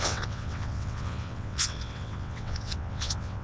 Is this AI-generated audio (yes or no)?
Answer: yes